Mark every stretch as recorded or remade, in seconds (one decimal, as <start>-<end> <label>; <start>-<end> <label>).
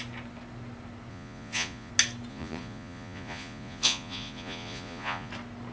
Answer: 0.0-1.1 recorded; 1.1-1.9 remade; 1.9-2.3 recorded; 2.3-5.3 remade; 5.3-5.7 recorded